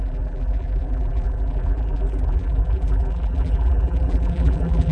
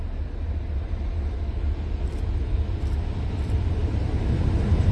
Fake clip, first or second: first